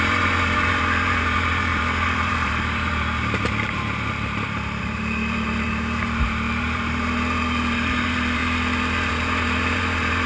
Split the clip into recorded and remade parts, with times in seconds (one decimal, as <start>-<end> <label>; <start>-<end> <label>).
0.0-8.4 remade; 8.4-9.1 recorded; 9.1-10.3 remade